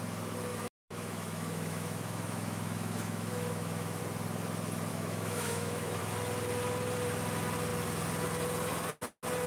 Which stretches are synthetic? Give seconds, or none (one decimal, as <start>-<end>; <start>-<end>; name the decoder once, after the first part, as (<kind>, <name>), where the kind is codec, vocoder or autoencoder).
0.5-4.0 (autoencoder, DAC-VAE); 4.9-6.0